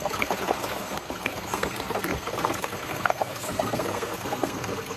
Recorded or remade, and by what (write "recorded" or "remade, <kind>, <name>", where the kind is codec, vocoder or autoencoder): remade, codec, SNAC